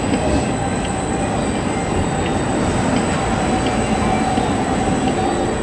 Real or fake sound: real